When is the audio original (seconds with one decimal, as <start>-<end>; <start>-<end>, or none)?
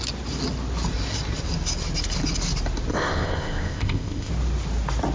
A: 0.0-2.9; 4.3-5.1